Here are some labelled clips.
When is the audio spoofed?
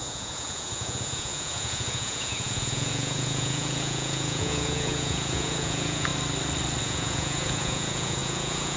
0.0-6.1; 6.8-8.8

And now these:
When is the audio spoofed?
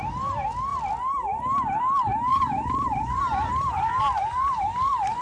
2.3-3.2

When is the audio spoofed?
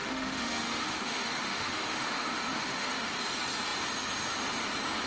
0.0-3.1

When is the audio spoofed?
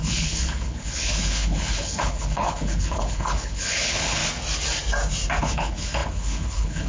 0.0-4.2; 5.4-6.9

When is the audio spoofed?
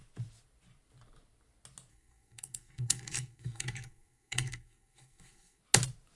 1.9-5.6